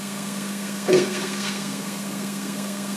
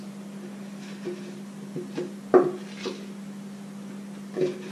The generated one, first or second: first